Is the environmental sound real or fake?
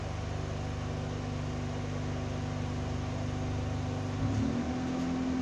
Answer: real